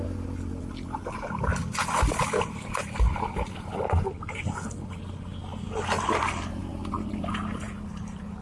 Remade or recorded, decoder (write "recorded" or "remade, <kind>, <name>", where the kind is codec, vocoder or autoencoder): recorded